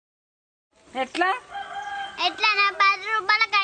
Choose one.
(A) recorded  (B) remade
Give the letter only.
A